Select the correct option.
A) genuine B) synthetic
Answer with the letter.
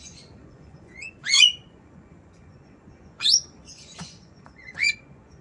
B